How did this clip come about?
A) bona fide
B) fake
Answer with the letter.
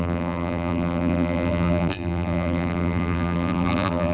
B